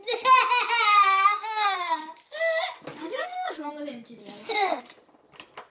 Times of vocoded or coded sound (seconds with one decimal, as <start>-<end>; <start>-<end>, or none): 0.9-2.0; 3.0-3.7; 4.2-4.8